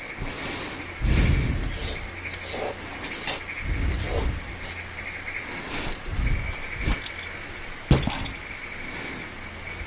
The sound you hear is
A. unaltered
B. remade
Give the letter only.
A